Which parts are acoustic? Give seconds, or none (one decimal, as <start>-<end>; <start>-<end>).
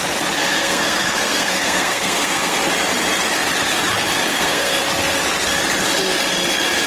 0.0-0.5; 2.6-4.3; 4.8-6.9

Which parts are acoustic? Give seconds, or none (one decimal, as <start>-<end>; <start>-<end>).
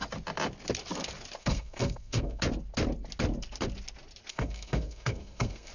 0.0-1.4; 2.4-4.3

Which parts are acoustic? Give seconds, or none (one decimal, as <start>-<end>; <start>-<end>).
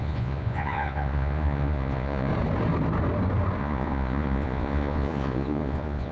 2.3-3.6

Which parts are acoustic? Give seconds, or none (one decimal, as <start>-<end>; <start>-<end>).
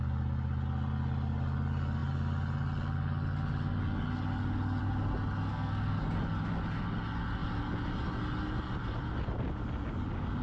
0.0-5.5; 6.0-10.4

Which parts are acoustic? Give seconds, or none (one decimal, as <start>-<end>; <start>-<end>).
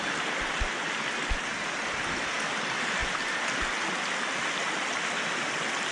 0.0-5.9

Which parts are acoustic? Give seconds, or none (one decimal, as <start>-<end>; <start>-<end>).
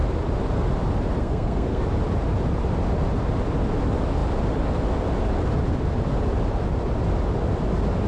0.0-1.2; 1.8-8.1